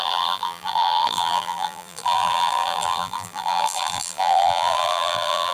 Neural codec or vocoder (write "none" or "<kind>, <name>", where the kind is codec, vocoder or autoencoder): vocoder, BigVGAN v2